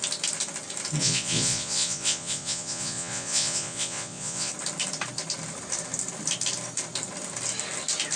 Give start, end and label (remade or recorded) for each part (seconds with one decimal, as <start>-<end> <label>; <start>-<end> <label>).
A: 0.0-1.0 recorded; 1.0-4.5 remade; 4.5-8.2 recorded